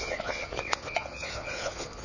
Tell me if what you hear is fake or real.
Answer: fake